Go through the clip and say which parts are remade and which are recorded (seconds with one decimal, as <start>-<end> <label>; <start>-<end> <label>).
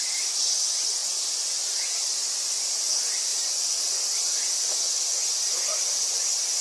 0.0-6.6 recorded